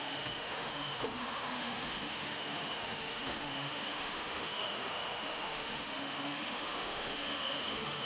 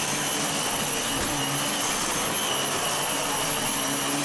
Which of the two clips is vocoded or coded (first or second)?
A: first